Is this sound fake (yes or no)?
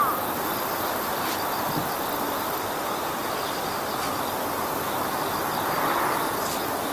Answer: no